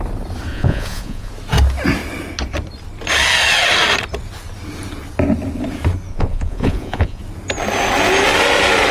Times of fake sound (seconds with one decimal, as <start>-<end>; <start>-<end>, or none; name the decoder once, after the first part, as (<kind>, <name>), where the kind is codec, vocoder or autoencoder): 0.5-1.3 (vocoder, Vocos); 6.1-7.2